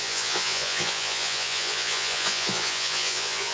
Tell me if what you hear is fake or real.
fake